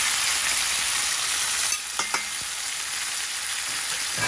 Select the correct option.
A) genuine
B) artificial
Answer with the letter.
A